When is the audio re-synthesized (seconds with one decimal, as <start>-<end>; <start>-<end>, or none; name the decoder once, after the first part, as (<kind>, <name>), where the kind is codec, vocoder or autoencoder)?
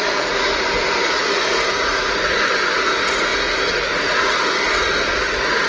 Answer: 0.0-0.5 (vocoder, Vocos); 1.1-5.7